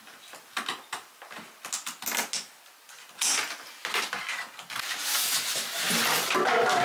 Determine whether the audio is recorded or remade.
recorded